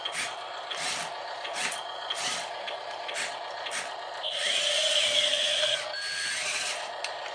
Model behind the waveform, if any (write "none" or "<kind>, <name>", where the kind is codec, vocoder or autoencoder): none